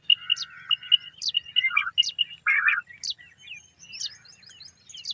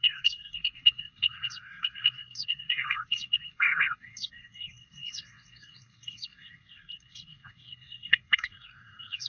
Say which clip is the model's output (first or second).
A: second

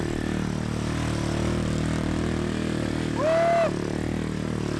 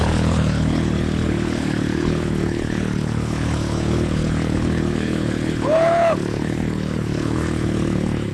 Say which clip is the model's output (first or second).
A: second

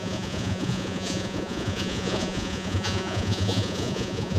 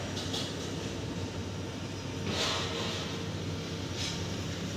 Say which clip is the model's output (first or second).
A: first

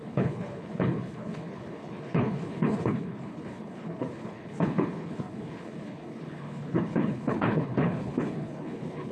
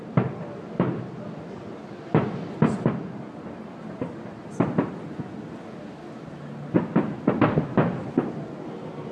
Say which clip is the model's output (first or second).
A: first